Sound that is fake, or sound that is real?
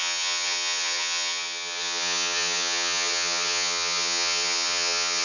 fake